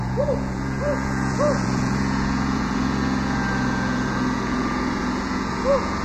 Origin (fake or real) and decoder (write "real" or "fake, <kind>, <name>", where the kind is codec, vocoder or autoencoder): fake, vocoder, Vocos